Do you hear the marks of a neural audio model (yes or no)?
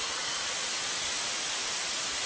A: no